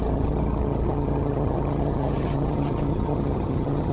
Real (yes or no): no